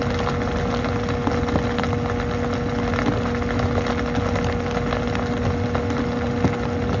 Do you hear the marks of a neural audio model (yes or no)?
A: no